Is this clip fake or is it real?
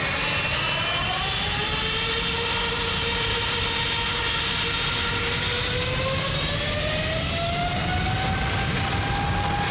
real